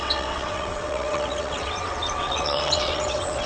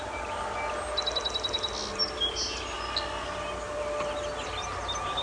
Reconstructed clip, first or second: first